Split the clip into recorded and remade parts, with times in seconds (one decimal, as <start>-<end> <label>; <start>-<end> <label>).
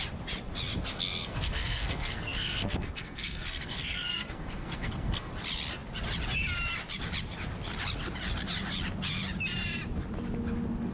0.0-0.9 recorded; 0.9-5.3 remade; 5.3-10.9 recorded